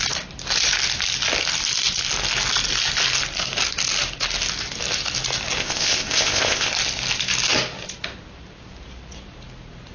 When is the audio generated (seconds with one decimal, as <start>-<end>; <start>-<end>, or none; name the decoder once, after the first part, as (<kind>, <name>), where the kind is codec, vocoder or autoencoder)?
5.6-6.7 (codec, ZipCodec)